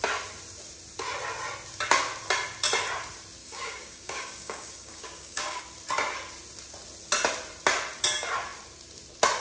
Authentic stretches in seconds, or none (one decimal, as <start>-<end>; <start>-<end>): 0.0-3.4; 5.6-9.4